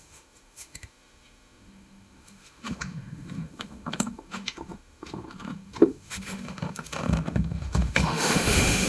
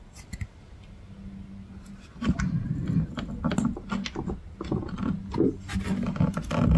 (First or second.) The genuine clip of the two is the second